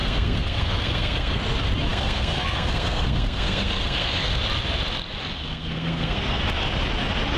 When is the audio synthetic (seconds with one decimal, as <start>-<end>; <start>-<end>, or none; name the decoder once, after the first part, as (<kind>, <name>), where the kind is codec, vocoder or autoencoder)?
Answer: 0.0-1.4 (codec, SNAC); 1.9-4.4; 5.3-6.4